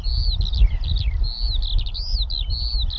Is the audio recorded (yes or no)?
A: yes